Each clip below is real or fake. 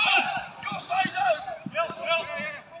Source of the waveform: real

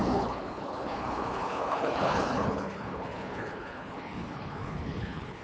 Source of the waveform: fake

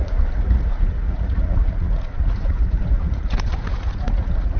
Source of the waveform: fake